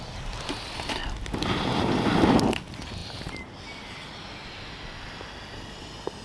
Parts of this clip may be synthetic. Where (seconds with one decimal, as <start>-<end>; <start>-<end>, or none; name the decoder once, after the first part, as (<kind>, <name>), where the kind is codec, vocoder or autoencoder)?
1.0-2.3 (vocoder, BigVGAN v2)